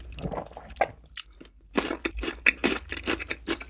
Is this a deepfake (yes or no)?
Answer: no